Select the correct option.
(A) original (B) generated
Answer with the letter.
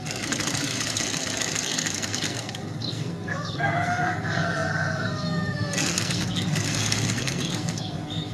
B